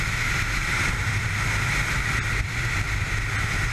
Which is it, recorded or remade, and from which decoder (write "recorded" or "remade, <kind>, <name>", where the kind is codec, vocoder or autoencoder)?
recorded